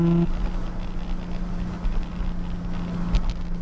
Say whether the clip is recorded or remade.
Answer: recorded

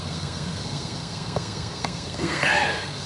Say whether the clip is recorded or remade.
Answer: remade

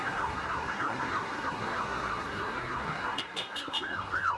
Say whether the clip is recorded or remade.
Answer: remade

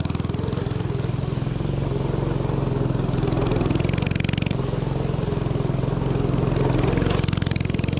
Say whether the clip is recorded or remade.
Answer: recorded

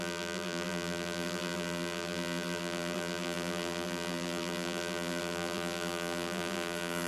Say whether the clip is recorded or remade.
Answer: remade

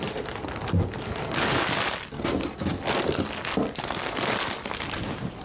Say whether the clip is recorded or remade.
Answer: recorded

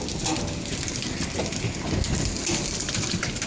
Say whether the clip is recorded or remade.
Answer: recorded